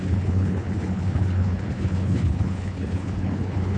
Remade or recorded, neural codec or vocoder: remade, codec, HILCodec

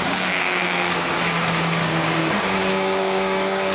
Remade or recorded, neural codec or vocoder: remade, codec, DAC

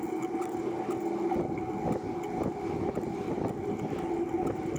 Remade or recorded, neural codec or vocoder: recorded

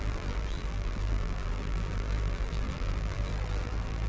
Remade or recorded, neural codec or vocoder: remade, vocoder, BigVGAN v2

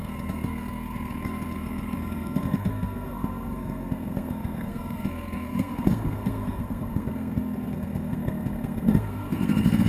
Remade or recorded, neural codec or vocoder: remade, codec, SNAC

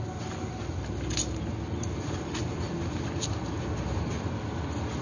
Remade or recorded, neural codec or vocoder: recorded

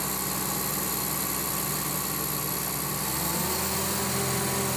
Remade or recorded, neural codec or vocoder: recorded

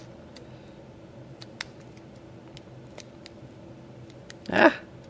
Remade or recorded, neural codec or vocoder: recorded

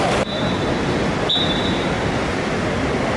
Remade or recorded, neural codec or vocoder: remade, vocoder, BigVGAN v2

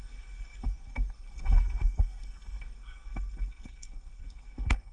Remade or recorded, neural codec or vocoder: remade, codec, SNAC